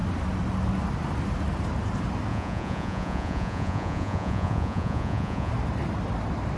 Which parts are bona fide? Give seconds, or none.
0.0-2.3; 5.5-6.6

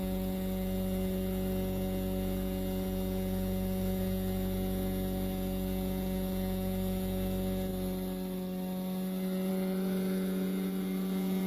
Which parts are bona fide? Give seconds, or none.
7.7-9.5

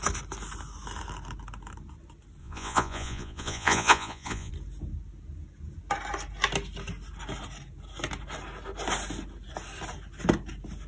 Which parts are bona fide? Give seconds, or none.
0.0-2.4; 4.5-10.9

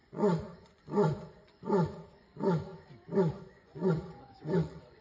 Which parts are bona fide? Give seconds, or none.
2.7-3.3

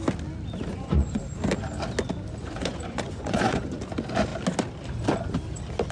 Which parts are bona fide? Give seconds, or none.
0.0-0.7; 1.2-2.4; 3.8-5.9